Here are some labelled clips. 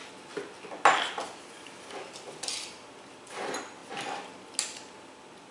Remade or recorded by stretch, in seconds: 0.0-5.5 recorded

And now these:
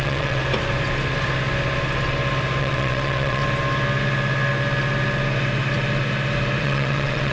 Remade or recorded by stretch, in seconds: 0.0-0.4 remade; 0.4-2.6 recorded; 2.6-3.4 remade; 3.4-6.6 recorded; 6.6-7.3 remade

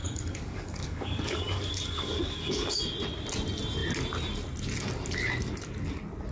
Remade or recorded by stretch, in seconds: 0.0-2.8 remade; 2.8-6.3 recorded

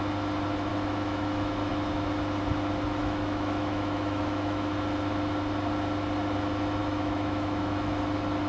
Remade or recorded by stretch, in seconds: 0.0-0.7 recorded; 0.7-1.7 remade; 1.7-3.0 recorded; 3.0-4.7 remade; 4.7-6.8 recorded; 6.8-8.0 remade; 8.0-8.5 recorded

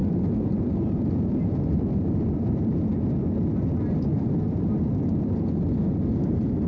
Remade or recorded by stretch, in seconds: 0.0-3.2 remade; 3.2-6.7 recorded